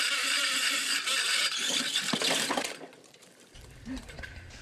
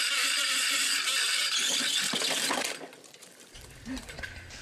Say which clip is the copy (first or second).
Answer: first